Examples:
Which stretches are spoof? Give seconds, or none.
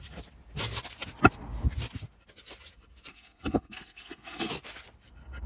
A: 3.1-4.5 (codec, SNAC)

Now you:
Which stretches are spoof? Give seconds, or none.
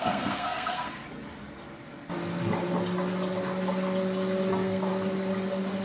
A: 0.0-1.0 (codec, SNAC); 4.5-4.9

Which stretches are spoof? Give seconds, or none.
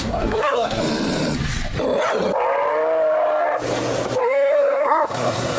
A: 0.0-0.8 (codec, SNAC); 4.2-5.6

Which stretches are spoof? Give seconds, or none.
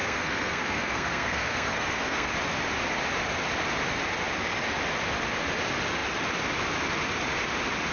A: 0.0-2.3 (codec, SNAC)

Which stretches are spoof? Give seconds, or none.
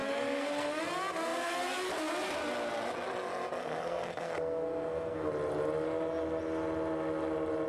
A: 0.0-0.8 (codec, SNAC); 3.6-5.3